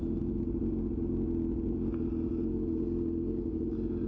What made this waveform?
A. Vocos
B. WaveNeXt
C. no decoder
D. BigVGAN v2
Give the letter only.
C